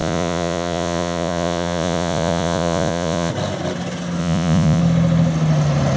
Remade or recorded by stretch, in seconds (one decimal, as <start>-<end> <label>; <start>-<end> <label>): 0.0-3.3 remade; 3.3-4.2 recorded; 4.2-4.8 remade; 4.8-6.0 recorded